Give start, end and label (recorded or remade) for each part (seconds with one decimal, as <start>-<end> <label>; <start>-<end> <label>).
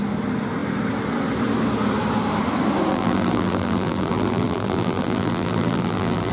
0.0-2.9 recorded; 2.9-6.3 remade